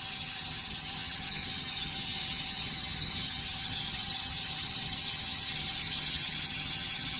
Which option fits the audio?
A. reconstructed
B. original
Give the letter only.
A